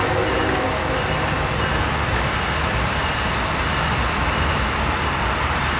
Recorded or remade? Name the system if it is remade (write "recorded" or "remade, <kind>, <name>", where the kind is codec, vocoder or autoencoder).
recorded